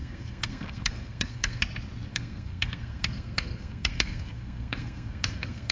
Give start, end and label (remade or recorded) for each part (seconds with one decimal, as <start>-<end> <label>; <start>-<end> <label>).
0.0-1.6 remade; 1.6-2.1 recorded; 2.1-5.7 remade